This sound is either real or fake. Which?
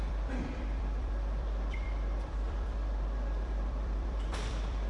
fake